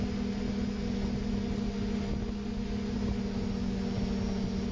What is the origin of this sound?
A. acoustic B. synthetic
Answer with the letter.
A